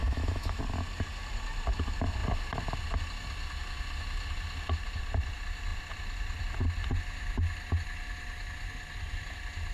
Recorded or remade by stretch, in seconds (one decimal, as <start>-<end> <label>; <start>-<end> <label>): 0.0-0.6 remade; 0.6-9.7 recorded